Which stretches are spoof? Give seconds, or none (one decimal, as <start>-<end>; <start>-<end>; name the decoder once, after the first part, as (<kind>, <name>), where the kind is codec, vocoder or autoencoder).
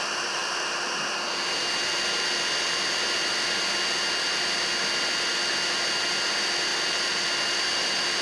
none